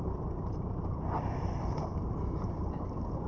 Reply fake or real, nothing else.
fake